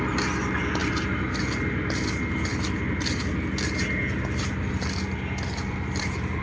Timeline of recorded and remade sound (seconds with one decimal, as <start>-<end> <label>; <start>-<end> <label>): 0.0-6.4 recorded